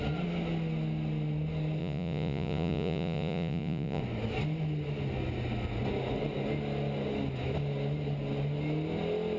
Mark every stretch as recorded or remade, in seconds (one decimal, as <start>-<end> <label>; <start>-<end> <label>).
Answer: 0.0-1.8 recorded; 1.8-4.0 remade; 4.0-9.4 recorded